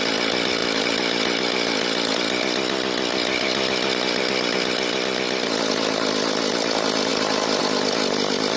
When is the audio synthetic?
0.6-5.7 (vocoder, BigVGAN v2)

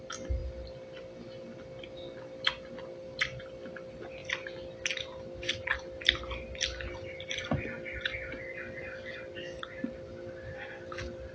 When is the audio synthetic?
none

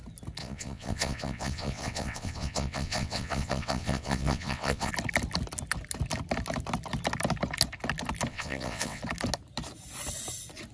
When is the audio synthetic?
0.4-4.9 (vocoder, WaveNeXt); 8.3-9.0